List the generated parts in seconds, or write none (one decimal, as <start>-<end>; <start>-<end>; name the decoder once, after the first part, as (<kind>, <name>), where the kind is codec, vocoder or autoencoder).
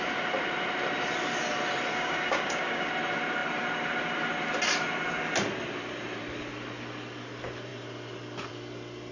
1.9-2.9 (codec, DAC)